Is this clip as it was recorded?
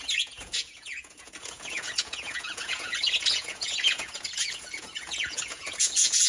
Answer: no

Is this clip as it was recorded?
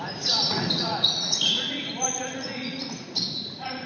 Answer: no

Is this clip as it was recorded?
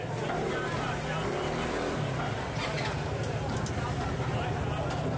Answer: yes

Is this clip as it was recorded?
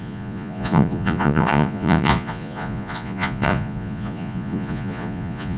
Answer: no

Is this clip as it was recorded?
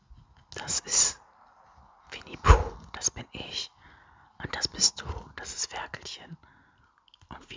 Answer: yes